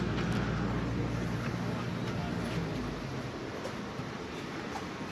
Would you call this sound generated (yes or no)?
no